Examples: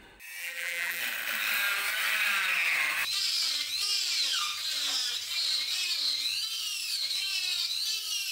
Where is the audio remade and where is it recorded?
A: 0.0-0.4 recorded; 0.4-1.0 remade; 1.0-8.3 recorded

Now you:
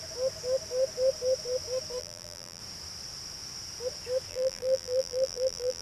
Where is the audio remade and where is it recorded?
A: 0.0-2.0 recorded; 2.0-2.6 remade; 2.6-4.3 recorded; 4.3-5.8 remade

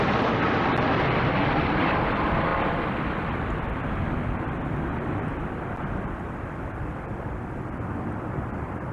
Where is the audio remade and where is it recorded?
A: 0.0-2.5 remade; 2.5-6.1 recorded; 6.1-8.9 remade

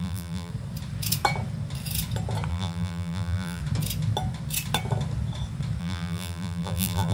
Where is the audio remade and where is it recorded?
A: 0.0-0.5 remade; 0.5-2.5 recorded; 2.5-3.6 remade; 3.6-5.8 recorded; 5.8-7.1 remade

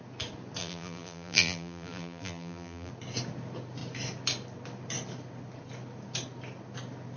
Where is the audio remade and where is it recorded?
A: 0.0-0.6 recorded; 0.6-2.9 remade; 2.9-7.2 recorded

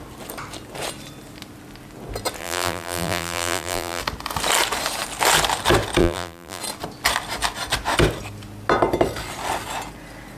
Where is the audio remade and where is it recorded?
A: 0.0-2.4 recorded; 2.4-4.0 remade; 4.0-6.0 recorded; 6.0-6.6 remade; 6.6-10.4 recorded

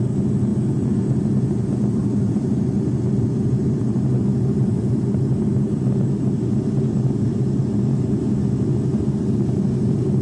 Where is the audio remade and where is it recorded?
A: 0.0-2.0 recorded; 2.0-3.3 remade; 3.3-4.3 recorded; 4.3-5.6 remade; 5.6-10.2 recorded

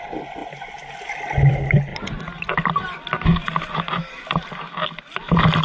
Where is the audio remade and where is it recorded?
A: 0.0-5.6 recorded